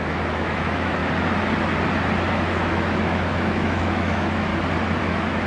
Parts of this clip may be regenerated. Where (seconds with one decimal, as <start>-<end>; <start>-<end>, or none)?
0.0-1.0; 2.3-4.5; 5.0-5.5